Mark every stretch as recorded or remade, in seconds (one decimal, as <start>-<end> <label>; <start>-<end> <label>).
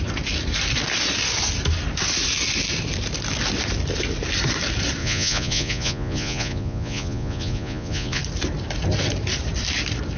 0.0-5.0 recorded; 5.0-8.2 remade; 8.2-10.2 recorded